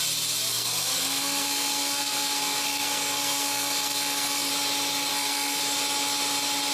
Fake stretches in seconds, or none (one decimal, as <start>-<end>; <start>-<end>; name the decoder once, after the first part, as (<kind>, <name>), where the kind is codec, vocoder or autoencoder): 0.5-4.5 (codec, SNAC); 5.1-5.6